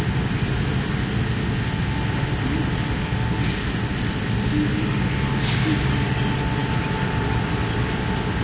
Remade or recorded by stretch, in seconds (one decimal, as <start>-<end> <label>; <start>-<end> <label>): 0.0-8.4 recorded